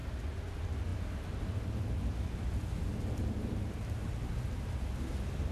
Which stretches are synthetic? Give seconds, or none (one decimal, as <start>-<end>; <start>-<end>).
none